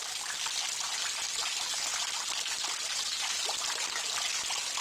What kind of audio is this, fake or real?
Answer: real